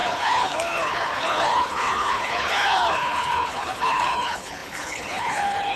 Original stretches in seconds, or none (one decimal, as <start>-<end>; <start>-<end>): none